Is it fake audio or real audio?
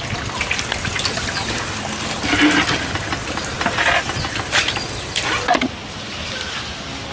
real